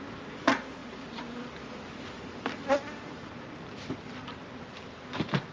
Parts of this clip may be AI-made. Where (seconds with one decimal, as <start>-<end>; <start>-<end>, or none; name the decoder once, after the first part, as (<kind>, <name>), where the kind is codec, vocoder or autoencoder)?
none